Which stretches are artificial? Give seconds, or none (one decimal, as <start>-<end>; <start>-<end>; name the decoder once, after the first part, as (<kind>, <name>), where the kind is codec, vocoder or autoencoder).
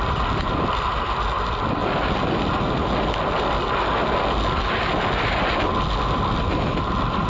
0.0-1.8 (vocoder, BigVGAN v2); 6.1-7.3